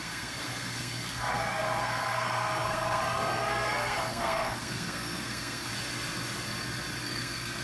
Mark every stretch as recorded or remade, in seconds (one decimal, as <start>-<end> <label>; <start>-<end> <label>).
0.0-5.7 remade; 5.7-7.0 recorded; 7.0-7.6 remade